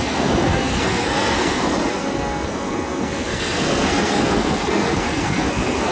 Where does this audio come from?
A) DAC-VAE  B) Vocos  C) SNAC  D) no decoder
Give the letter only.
C